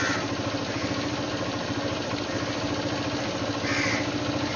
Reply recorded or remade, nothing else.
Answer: recorded